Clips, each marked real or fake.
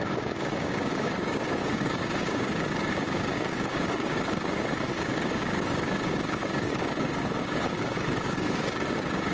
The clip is fake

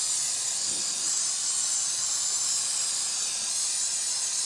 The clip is real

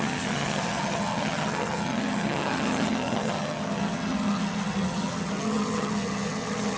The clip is fake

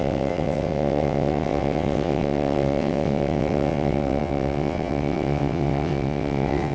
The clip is fake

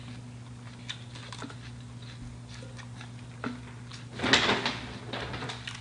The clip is real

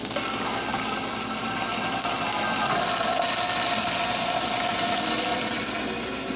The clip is real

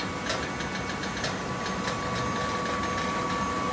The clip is real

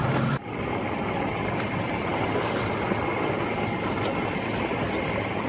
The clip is real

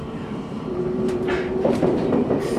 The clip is fake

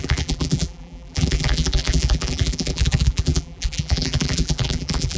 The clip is fake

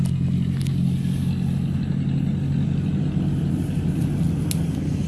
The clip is real